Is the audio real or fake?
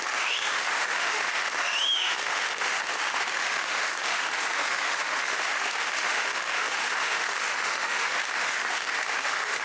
fake